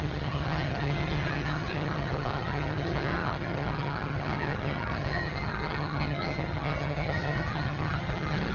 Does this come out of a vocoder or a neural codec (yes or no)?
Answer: yes